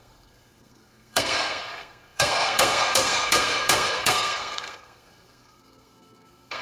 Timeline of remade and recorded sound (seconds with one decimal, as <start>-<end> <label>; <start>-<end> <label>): 0.0-6.6 remade